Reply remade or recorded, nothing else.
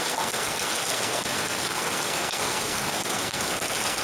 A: remade